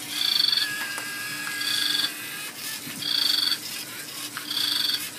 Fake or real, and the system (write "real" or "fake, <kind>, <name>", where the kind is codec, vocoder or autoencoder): real